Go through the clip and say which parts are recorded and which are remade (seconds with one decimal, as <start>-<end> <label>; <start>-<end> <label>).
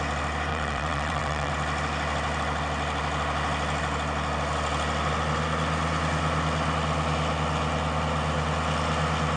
0.0-0.5 recorded; 0.5-1.5 remade; 1.5-9.4 recorded